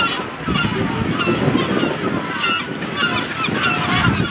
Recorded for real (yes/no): yes